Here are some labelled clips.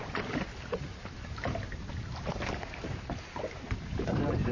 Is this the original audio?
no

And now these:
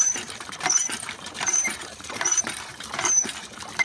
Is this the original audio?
no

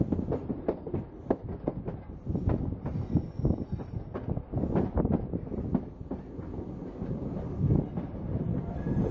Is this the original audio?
yes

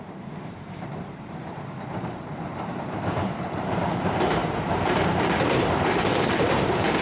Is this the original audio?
no